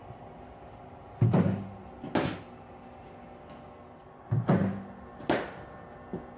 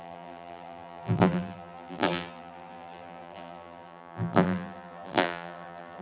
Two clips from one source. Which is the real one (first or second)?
first